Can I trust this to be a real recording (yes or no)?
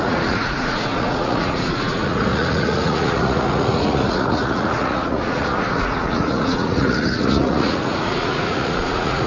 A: no